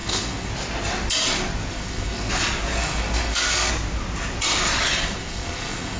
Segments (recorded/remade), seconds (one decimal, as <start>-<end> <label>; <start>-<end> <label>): 0.0-0.5 remade; 0.5-1.7 recorded; 1.7-2.3 remade; 2.3-2.8 recorded; 2.8-3.7 remade; 3.7-5.2 recorded; 5.2-6.0 remade